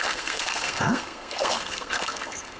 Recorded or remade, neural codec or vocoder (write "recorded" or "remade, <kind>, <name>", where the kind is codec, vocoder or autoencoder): remade, codec, SNAC